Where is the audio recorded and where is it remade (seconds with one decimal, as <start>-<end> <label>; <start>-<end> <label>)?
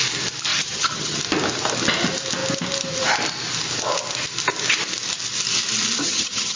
0.0-0.5 recorded; 0.5-1.2 remade; 1.2-6.0 recorded; 6.0-6.6 remade